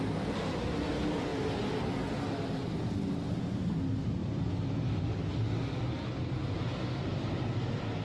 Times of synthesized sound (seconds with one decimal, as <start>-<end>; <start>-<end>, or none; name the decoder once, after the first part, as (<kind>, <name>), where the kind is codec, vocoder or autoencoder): none

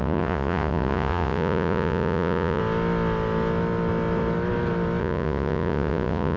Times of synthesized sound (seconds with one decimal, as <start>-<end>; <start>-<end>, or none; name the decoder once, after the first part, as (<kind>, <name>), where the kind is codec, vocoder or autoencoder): 0.0-2.6 (vocoder, Vocos); 5.0-6.4

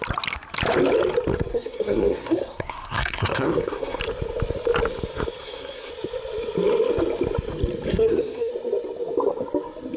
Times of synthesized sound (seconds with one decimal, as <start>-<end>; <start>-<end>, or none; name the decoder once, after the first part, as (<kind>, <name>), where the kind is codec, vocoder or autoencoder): 1.5-4.0 (codec, SNAC); 5.4-5.9; 7.9-8.5

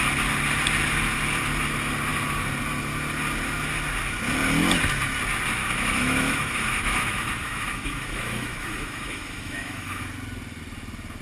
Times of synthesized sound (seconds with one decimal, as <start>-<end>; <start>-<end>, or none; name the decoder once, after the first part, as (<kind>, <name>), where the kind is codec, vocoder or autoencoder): 5.6-10.0 (autoencoder, DAC-VAE)

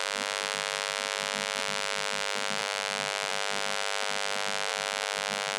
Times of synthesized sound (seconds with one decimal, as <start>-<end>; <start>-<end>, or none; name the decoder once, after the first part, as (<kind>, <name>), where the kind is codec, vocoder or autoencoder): none

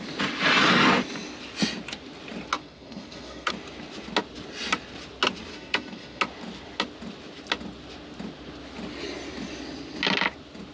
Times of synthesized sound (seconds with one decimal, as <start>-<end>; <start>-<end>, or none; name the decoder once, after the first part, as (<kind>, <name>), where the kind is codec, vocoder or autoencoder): 2.6-3.5 (codec, SNAC); 5.5-6.2

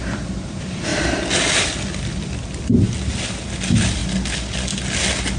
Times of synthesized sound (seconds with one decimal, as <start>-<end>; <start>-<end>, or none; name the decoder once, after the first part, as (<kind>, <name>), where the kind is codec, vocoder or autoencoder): 0.0-4.0 (vocoder, BigVGAN v2)

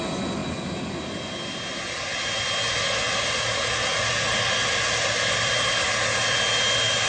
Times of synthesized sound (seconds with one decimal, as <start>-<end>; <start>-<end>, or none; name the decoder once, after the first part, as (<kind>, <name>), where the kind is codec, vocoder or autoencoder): none